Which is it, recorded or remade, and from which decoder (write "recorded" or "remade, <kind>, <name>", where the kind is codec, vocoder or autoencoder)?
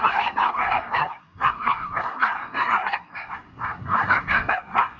remade, codec, SNAC